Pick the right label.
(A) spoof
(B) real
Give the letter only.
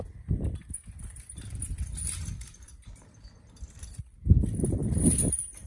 A